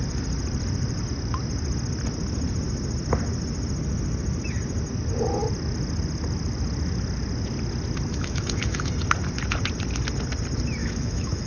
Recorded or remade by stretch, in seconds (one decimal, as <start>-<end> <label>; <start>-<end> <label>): 0.0-8.1 recorded; 8.1-8.9 remade; 8.9-10.8 recorded; 10.8-11.5 remade